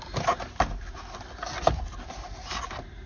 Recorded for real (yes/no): yes